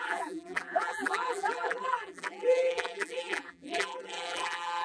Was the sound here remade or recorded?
remade